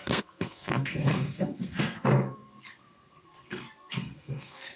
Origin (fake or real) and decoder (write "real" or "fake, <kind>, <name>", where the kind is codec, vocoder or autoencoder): fake, codec, SNAC